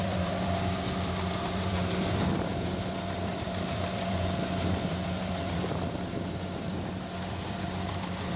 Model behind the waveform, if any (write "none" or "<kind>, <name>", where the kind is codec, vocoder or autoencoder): vocoder, BigVGAN v2